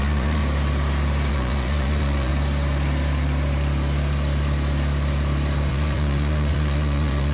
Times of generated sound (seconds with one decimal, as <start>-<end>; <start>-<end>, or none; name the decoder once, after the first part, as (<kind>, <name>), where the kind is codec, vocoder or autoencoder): 0.0-0.4 (vocoder, Vocos); 1.3-2.3; 5.7-7.3